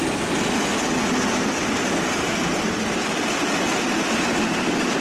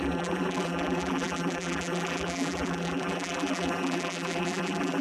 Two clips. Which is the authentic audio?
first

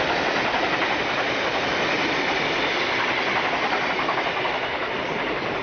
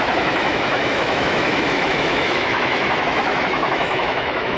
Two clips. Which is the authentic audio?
first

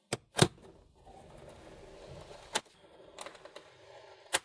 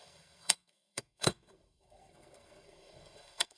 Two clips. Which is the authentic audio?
first